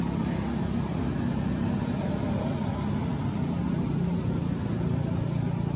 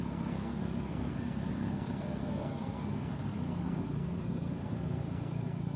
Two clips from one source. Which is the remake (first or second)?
second